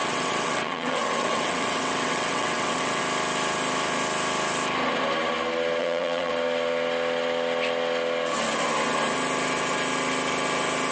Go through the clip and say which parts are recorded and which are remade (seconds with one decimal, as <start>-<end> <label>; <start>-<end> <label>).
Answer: 0.0-3.0 remade; 3.0-5.8 recorded; 5.8-6.3 remade; 6.3-10.9 recorded

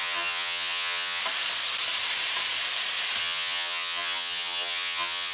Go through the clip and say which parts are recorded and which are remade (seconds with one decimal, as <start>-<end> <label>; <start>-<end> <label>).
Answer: 0.0-1.2 remade; 1.2-3.2 recorded; 3.2-5.3 remade

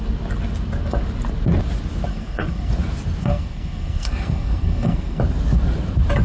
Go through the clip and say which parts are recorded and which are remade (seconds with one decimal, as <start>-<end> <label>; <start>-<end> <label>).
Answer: 0.0-2.1 recorded; 2.1-2.7 remade; 2.7-3.2 recorded; 3.2-5.2 remade; 5.2-6.2 recorded

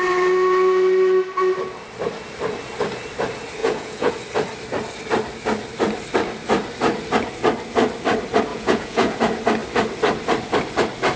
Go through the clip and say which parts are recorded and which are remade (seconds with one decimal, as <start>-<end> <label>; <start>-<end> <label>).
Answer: 0.0-3.6 recorded; 3.6-4.1 remade; 4.1-8.5 recorded; 8.5-9.2 remade; 9.2-11.2 recorded

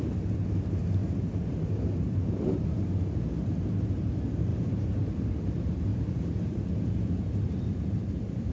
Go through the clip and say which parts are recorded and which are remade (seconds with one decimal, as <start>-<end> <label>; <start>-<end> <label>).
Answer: 0.0-1.0 recorded; 1.0-2.9 remade; 2.9-4.5 recorded; 4.5-5.1 remade; 5.1-5.9 recorded; 5.9-8.5 remade